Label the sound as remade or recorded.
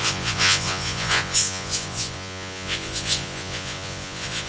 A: remade